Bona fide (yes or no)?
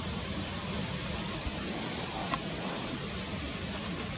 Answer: yes